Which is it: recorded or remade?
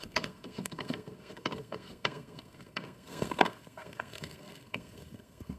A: remade